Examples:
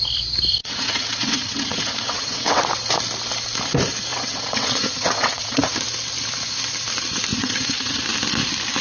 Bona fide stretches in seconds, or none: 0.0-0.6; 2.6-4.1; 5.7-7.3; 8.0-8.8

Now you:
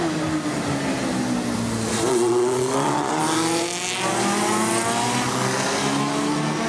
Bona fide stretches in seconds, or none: 0.0-2.1; 3.2-6.7